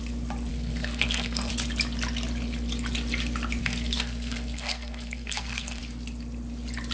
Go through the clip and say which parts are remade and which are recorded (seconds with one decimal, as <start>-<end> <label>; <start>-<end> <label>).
0.0-0.5 recorded; 0.5-1.5 remade; 1.5-3.6 recorded; 3.6-5.8 remade; 5.8-6.9 recorded